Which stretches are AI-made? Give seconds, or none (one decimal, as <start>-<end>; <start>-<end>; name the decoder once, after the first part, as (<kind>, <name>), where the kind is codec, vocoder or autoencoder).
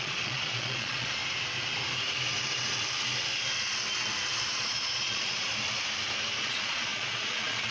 0.0-1.2 (vocoder, Vocos); 4.5-5.5; 6.4-7.7